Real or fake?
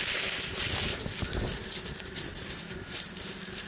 real